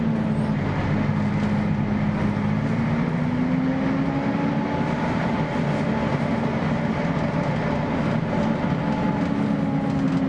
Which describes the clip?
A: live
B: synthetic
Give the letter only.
A